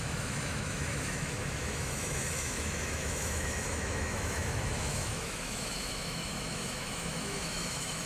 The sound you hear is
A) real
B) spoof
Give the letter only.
B